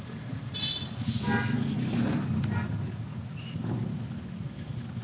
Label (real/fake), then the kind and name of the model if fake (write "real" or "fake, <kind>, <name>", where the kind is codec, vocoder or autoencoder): real